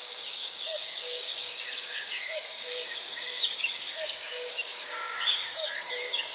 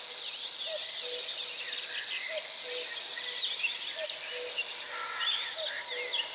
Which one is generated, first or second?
first